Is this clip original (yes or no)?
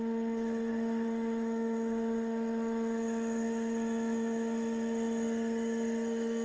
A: no